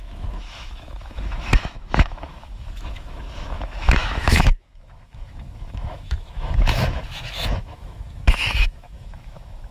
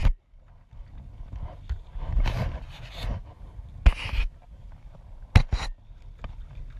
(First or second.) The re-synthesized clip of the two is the first